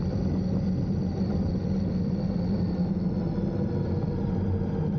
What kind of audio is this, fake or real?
real